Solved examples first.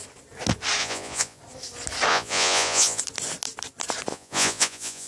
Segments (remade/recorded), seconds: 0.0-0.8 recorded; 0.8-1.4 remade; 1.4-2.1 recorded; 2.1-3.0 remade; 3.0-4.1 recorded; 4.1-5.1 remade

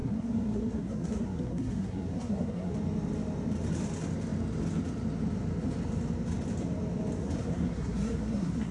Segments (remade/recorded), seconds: 0.0-2.7 remade; 2.7-7.2 recorded; 7.2-8.7 remade

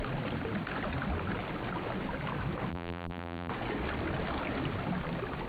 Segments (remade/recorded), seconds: 0.0-2.7 recorded; 2.7-3.5 remade; 3.5-5.5 recorded

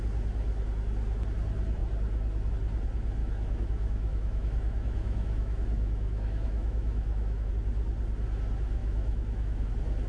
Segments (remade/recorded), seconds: 0.0-3.2 recorded; 3.2-7.5 remade; 7.5-8.8 recorded; 8.8-9.7 remade; 9.7-10.1 recorded

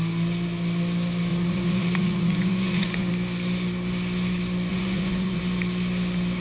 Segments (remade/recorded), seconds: 0.0-1.3 recorded; 1.3-3.1 remade; 3.1-4.7 recorded; 4.7-5.4 remade; 5.4-6.4 recorded

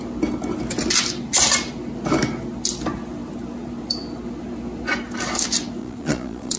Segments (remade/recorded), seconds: 0.0-5.8 recorded; 5.8-6.6 remade